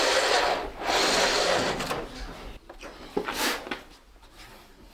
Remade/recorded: recorded